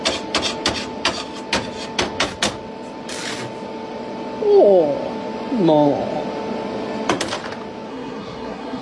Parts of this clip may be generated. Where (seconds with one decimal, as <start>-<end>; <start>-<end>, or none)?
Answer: 7.9-8.8

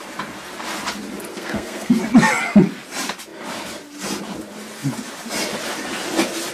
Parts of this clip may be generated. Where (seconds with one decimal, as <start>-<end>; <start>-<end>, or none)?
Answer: 1.3-2.0

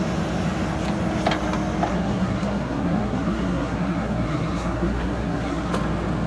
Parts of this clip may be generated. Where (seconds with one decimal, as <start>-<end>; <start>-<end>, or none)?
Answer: 1.9-5.7

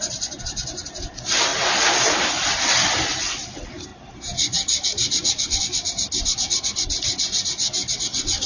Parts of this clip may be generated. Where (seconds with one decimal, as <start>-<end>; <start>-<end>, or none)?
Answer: none